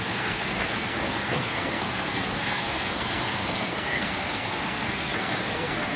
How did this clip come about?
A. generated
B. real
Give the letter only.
A